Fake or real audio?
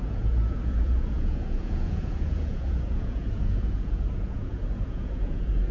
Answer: fake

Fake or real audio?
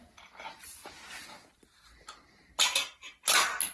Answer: real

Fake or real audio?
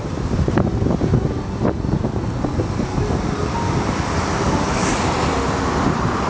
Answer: real